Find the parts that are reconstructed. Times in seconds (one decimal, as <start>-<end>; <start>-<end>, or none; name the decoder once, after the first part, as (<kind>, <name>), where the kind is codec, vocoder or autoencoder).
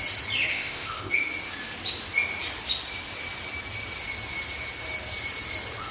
0.5-1.1 (codec, ZipCodec)